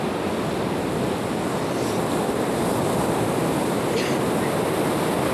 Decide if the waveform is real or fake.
real